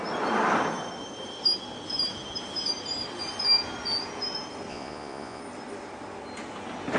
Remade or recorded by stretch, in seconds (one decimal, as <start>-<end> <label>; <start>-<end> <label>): 0.0-4.7 recorded; 4.7-5.4 remade; 5.4-7.0 recorded